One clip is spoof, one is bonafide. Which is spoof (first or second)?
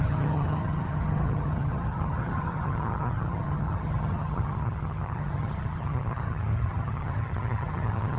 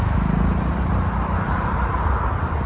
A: first